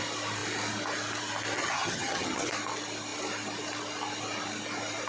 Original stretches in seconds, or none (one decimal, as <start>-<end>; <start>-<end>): 0.0-1.6; 2.5-5.1